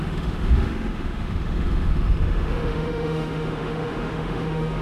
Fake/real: fake